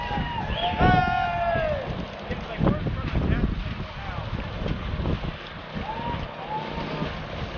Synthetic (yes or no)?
no